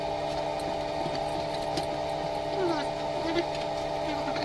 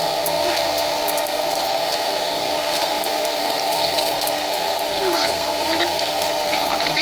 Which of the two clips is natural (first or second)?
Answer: first